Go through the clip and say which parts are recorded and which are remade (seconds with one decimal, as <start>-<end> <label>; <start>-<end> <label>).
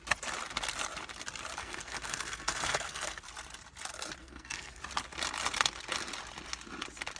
0.0-1.6 recorded; 1.6-3.2 remade; 3.2-4.2 recorded; 4.2-4.8 remade; 4.8-7.2 recorded